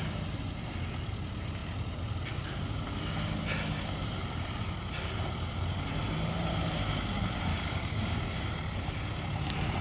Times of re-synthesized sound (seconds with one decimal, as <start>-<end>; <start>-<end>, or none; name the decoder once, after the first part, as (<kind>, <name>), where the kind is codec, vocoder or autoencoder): 7.5-8.4 (codec, DAC)